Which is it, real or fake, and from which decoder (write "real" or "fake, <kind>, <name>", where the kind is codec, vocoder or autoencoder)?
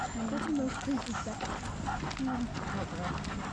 real